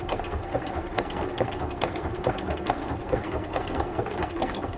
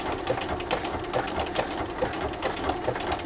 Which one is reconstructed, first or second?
first